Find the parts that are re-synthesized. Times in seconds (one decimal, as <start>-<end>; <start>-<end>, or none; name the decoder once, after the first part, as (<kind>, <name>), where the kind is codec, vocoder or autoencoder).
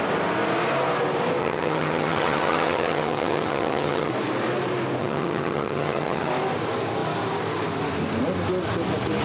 1.4-4.1 (vocoder, HiFi-GAN); 5.0-6.3